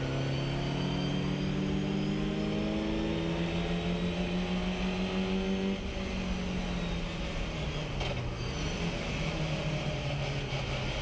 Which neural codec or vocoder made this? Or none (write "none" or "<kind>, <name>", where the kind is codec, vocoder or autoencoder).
none